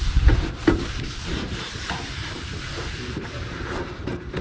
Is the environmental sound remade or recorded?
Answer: remade